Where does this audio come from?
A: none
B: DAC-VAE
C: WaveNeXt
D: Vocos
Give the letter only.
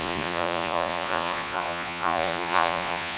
D